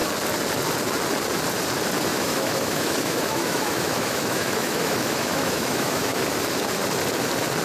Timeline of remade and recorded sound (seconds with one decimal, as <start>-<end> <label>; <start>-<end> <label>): 0.0-2.1 recorded; 2.1-6.2 remade; 6.2-7.6 recorded